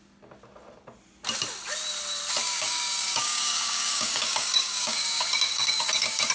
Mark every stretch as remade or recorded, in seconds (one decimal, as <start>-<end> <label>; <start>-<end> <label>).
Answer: 0.0-2.4 recorded; 2.4-6.3 remade